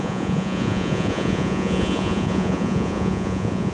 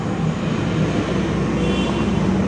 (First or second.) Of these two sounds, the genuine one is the second